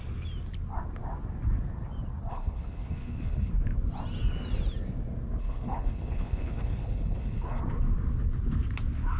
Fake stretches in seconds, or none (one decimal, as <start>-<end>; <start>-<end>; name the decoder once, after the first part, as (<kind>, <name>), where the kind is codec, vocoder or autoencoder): 2.3-3.5 (codec, HILCodec); 5.4-7.6